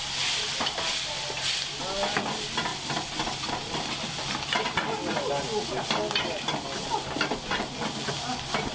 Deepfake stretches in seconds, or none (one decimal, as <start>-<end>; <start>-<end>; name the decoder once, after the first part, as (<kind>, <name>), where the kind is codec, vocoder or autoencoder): none